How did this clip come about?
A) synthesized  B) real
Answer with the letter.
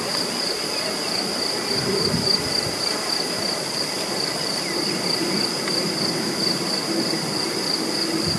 B